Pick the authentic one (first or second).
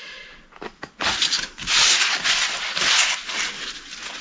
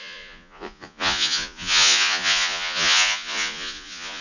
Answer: first